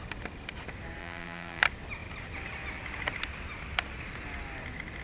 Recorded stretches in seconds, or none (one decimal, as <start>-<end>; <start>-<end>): 0.0-1.0; 1.6-5.0

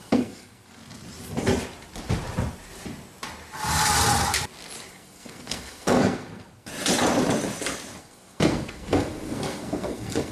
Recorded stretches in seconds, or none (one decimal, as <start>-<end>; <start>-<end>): 0.8-4.9; 6.7-8.0